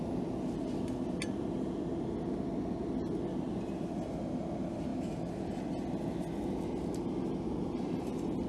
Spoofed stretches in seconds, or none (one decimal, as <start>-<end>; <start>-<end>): none